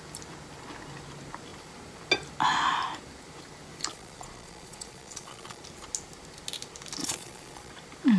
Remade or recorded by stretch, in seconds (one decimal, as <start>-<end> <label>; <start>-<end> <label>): 0.0-3.9 recorded; 3.9-5.6 remade; 5.6-7.0 recorded; 7.0-7.7 remade; 7.7-8.2 recorded